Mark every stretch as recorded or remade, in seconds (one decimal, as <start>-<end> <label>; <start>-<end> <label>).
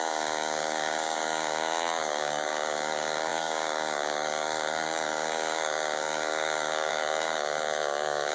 0.0-8.3 remade